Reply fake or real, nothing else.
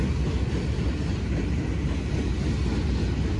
real